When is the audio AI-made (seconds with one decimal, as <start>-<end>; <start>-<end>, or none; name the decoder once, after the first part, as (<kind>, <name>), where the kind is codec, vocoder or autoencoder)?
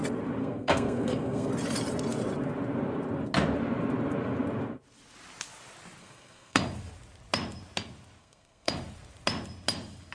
0.4-1.5 (codec, SNAC); 6.0-6.6; 8.2-8.7